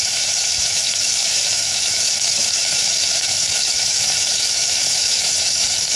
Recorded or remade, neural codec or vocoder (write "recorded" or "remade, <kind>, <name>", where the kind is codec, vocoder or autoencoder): remade, autoencoder, DAC-VAE